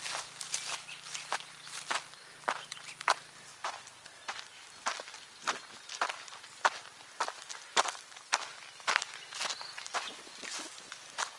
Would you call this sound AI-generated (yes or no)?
no